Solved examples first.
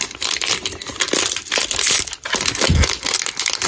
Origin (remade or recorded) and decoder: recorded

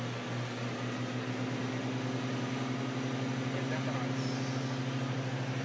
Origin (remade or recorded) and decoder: recorded